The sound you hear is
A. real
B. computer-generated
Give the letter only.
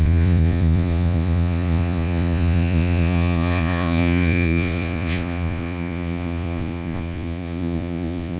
B